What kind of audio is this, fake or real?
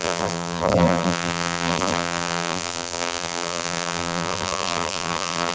fake